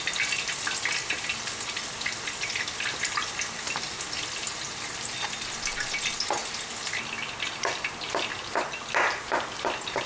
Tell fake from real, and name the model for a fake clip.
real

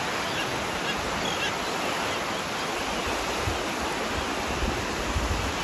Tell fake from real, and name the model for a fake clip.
real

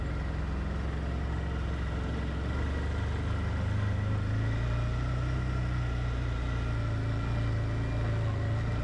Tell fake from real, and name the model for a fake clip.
real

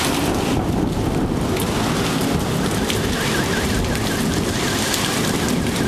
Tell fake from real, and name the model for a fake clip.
real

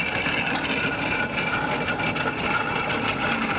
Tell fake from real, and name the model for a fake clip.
real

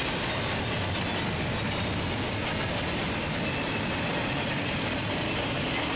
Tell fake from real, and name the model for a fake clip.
real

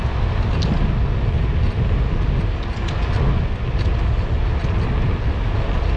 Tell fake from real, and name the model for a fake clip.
real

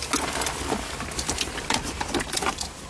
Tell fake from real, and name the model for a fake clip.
real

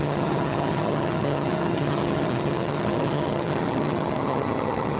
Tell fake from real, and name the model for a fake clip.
fake, vocoder, HiFi-GAN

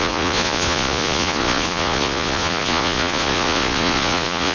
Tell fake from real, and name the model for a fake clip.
fake, vocoder, Vocos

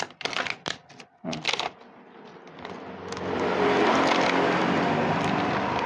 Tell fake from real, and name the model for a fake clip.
real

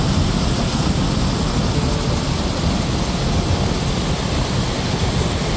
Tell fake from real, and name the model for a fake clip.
real